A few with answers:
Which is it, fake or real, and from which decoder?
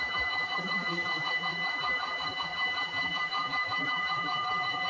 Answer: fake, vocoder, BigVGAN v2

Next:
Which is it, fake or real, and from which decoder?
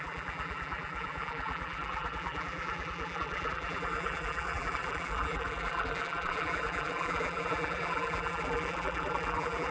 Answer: fake, vocoder, BigVGAN v2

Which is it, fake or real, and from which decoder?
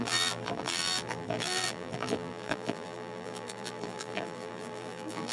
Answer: fake, vocoder, BigVGAN v2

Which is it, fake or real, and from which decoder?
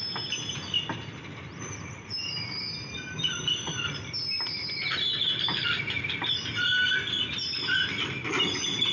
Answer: real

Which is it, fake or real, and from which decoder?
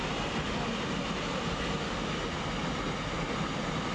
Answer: real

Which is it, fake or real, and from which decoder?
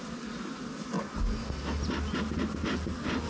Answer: real